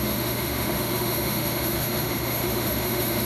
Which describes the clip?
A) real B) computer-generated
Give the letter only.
B